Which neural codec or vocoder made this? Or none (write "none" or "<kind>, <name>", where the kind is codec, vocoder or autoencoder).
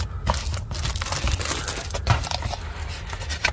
none